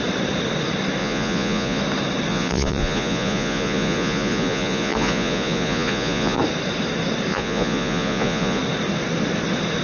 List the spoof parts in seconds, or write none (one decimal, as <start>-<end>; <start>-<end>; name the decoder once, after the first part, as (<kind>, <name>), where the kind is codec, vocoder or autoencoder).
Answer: 1.0-1.8 (vocoder, Vocos); 2.3-6.4; 7.3-8.6